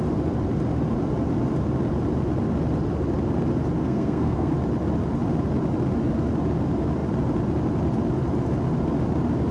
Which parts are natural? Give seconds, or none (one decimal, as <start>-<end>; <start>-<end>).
0.0-3.8; 4.5-9.5